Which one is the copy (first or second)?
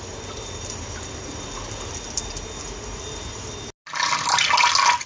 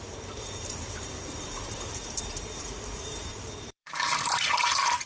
second